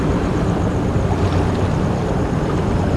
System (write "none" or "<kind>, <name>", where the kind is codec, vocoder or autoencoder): none